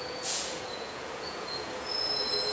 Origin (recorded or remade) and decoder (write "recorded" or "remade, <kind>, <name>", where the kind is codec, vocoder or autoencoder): remade, vocoder, Vocos